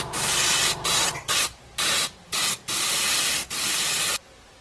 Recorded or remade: remade